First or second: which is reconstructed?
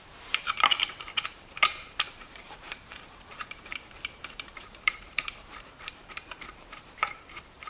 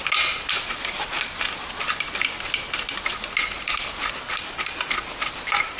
first